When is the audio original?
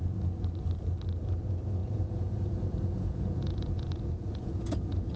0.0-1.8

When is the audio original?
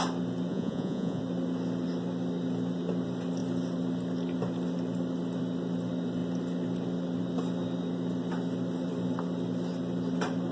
0.0-0.5; 1.2-10.5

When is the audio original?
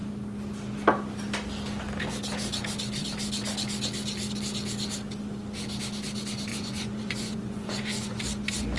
0.0-6.5; 8.2-8.8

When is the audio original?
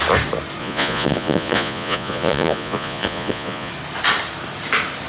0.0-0.6; 3.7-5.1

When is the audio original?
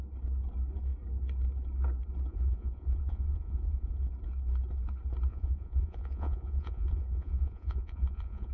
0.0-2.3; 4.1-5.3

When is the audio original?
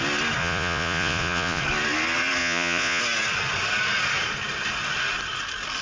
0.0-0.4; 1.6-2.4; 3.0-5.8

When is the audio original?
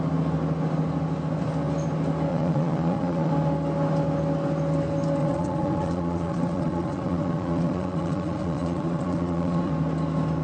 0.0-2.3; 3.3-5.2; 9.7-10.4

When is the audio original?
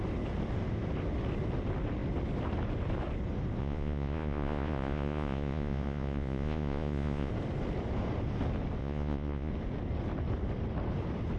0.0-3.6; 7.3-8.8; 9.5-11.4